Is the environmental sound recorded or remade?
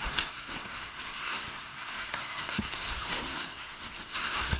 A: remade